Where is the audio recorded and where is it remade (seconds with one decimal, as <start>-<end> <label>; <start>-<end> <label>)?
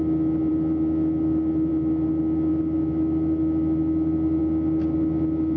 0.0-5.6 recorded